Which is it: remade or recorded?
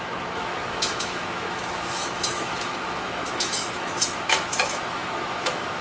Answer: remade